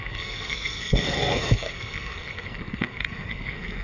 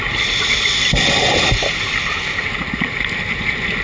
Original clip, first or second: second